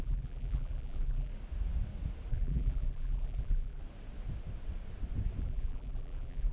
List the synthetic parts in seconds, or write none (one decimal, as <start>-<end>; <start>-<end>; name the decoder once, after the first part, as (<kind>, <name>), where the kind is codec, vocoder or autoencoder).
0.0-1.3 (vocoder, BigVGAN v2); 2.3-3.8; 5.4-6.5